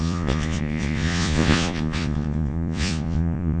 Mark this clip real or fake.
fake